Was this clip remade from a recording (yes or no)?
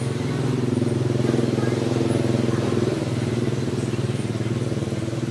no